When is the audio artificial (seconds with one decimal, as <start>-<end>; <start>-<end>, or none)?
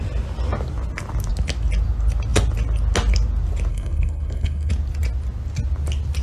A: 3.7-4.7